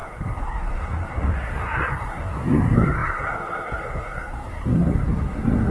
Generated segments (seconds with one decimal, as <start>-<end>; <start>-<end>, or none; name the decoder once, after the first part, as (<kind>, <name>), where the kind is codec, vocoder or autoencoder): 0.0-5.7 (codec, SNAC)